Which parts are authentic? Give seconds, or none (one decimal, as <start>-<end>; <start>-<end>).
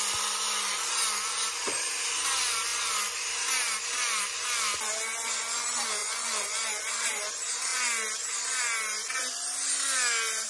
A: 0.0-6.0; 6.6-10.5